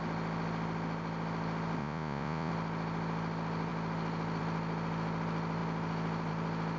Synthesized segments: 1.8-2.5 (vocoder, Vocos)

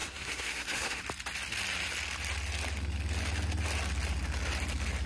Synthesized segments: 0.0-1.0 (codec, SNAC)

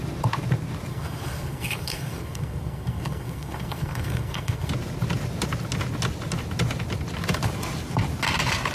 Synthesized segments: 0.9-4.7 (codec, SNAC)